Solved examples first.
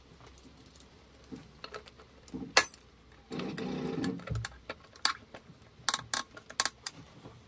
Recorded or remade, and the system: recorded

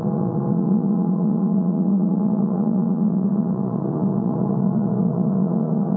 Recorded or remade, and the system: remade, vocoder, Vocos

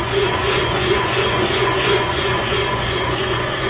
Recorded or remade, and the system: remade, vocoder, Vocos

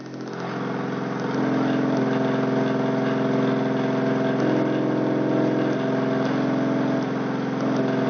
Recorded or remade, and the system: recorded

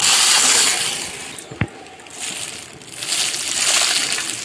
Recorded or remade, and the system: recorded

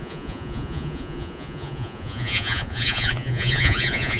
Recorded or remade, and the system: remade, vocoder, Vocos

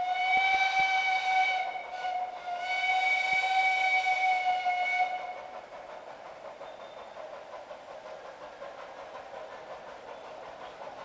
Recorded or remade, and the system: recorded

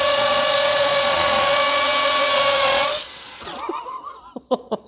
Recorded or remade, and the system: remade, vocoder, Vocos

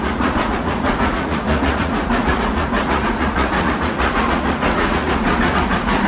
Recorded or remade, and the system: remade, vocoder, Vocos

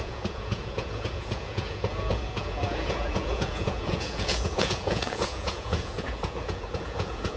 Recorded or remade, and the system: remade, vocoder, Vocos